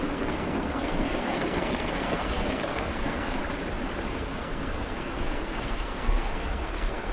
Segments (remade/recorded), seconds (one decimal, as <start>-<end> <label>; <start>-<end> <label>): 0.0-3.4 remade; 3.4-4.1 recorded; 4.1-7.1 remade